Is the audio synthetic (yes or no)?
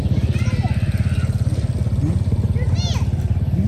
no